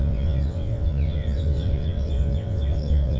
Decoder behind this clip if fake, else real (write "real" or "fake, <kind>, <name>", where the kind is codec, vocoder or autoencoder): fake, vocoder, WaveNeXt